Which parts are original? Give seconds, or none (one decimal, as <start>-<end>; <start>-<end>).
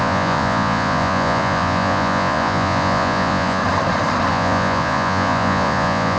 3.6-4.3